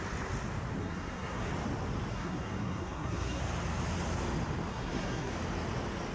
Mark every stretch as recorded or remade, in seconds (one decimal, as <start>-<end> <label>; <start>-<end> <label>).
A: 0.0-0.8 recorded; 0.8-1.5 remade; 1.5-2.1 recorded; 2.1-3.4 remade; 3.4-4.7 recorded; 4.7-5.3 remade; 5.3-6.1 recorded